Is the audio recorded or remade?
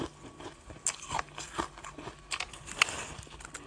recorded